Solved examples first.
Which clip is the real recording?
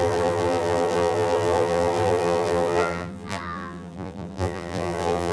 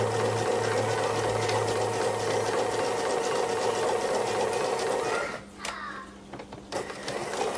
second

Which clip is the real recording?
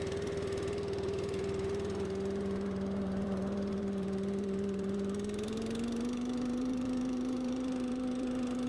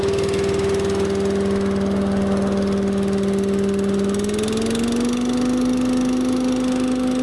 second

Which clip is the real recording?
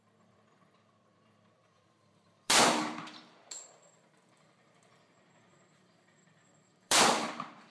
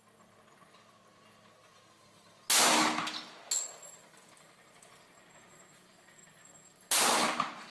second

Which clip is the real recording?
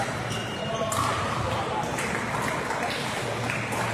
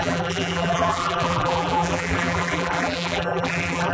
first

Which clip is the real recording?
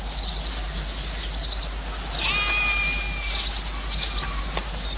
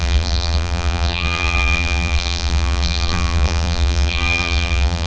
first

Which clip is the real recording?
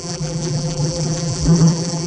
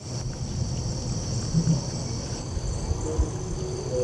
second